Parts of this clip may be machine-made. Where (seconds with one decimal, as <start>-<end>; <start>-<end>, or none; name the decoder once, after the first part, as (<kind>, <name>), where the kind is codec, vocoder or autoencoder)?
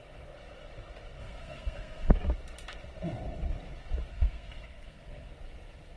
1.2-2.1 (codec, SNAC); 4.1-5.3